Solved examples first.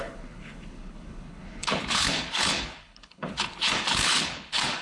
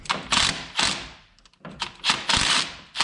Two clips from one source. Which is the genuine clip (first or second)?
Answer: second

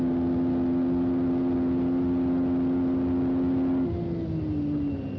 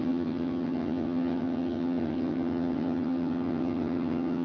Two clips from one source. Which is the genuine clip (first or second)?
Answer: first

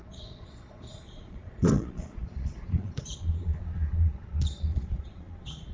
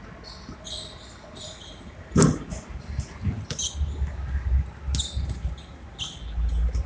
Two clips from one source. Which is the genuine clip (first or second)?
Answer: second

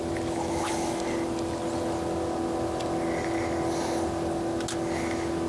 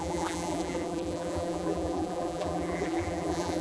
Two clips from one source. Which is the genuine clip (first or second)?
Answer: first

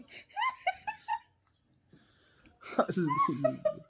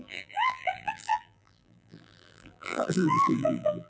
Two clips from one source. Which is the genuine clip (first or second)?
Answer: first